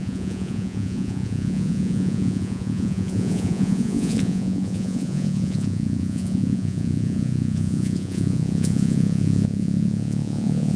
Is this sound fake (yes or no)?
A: yes